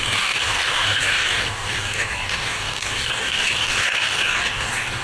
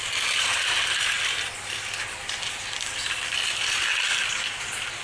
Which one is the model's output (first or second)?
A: first